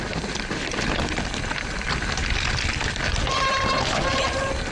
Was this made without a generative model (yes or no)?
yes